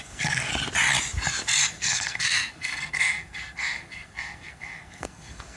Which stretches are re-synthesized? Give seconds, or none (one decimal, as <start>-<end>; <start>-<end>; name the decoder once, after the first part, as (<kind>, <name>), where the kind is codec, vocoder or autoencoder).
0.0-0.5 (codec, SNAC); 1.7-5.6